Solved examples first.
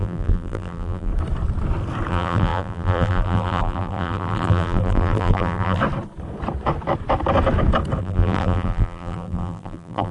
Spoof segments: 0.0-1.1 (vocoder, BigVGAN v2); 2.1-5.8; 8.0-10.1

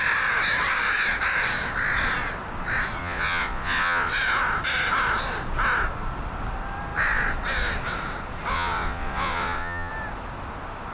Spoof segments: 3.0-4.1 (vocoder, Vocos); 8.5-9.9

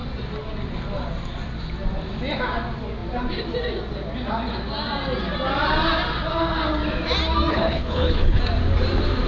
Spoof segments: 7.5-8.4 (codec, HILCodec)

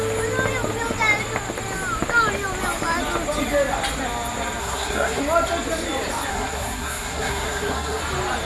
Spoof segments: 4.6-5.2 (codec, SNAC); 6.3-8.0